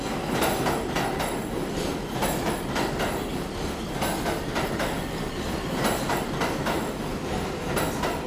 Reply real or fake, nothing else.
real